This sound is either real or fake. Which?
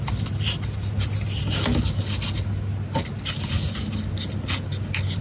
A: real